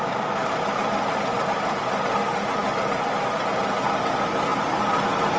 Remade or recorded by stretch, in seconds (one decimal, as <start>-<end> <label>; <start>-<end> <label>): 0.0-5.4 recorded